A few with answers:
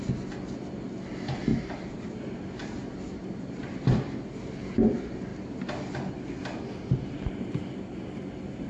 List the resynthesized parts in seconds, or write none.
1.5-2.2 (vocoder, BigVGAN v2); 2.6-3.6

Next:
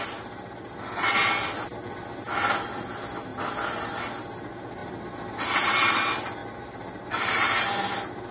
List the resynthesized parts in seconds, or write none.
none